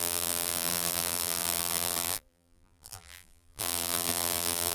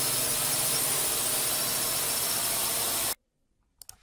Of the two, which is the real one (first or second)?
second